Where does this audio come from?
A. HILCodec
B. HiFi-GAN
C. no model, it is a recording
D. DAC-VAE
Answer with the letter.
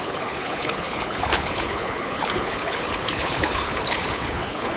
A